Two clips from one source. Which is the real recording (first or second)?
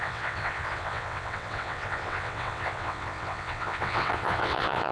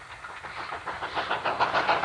second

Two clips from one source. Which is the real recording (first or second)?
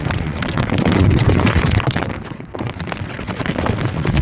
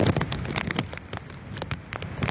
second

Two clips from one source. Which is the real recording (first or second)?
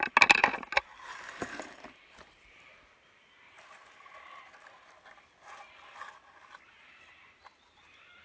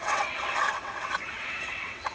first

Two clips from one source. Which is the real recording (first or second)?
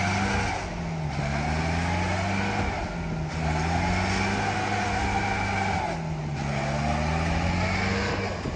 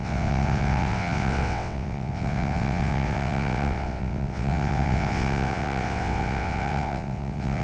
first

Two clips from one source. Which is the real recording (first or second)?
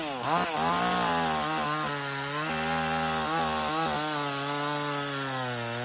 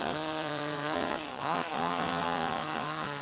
first